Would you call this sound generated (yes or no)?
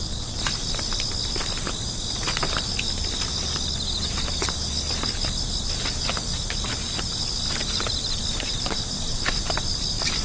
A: no